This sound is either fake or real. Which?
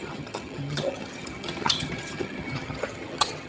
fake